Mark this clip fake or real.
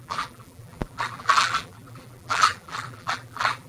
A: fake